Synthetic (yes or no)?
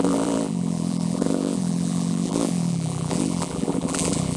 yes